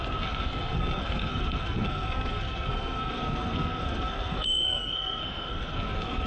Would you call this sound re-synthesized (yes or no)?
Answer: yes